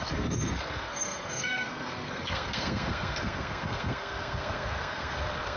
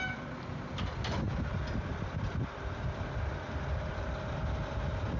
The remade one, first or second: first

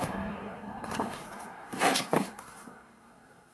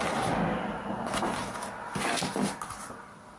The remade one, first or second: first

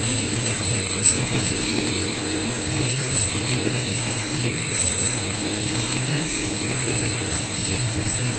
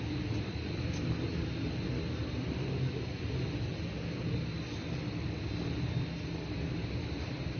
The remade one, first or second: first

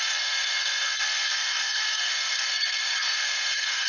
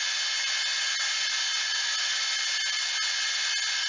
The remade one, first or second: first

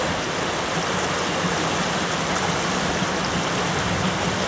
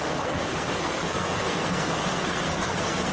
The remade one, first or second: second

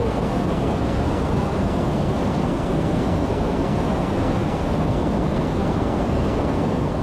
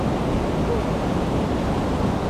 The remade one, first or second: first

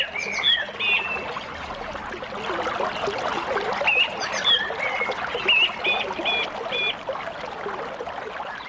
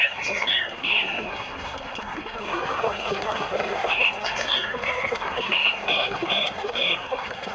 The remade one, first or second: second